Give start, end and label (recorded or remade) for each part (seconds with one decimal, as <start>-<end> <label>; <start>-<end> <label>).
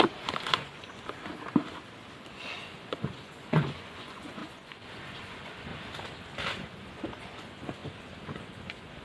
0.0-1.3 remade; 1.3-2.3 recorded; 2.3-5.7 remade; 5.7-6.5 recorded; 6.5-9.0 remade